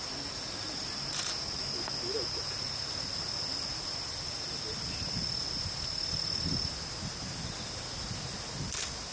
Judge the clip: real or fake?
real